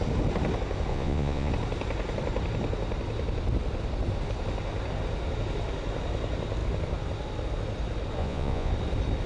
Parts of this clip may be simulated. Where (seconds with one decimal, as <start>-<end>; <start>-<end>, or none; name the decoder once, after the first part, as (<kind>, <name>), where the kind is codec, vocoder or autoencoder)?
0.9-1.5 (vocoder, Vocos); 8.2-8.7